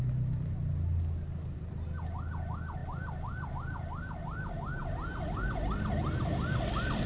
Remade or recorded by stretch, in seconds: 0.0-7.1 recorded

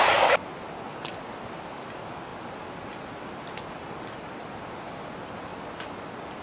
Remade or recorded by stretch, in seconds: 0.0-6.4 recorded

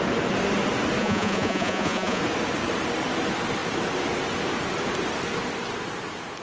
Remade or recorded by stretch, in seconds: 0.0-1.0 recorded; 1.0-2.2 remade; 2.2-6.4 recorded

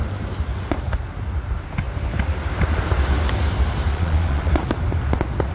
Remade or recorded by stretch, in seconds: 0.0-3.9 recorded; 3.9-4.5 remade; 4.5-5.5 recorded

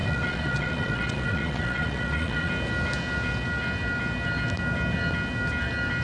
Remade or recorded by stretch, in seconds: 0.0-2.5 remade; 2.5-6.0 recorded

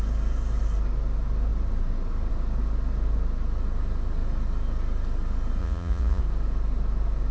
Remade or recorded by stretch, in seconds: 0.0-5.6 recorded; 5.6-6.2 remade; 6.2-7.3 recorded

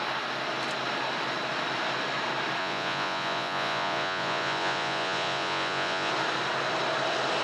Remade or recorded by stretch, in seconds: 0.0-2.6 recorded; 2.6-6.1 remade; 6.1-7.4 recorded